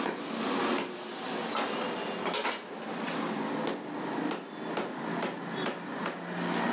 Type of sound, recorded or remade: recorded